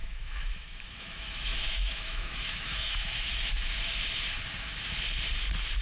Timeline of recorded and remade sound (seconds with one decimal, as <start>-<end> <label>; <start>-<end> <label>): 0.0-3.5 remade; 3.5-5.8 recorded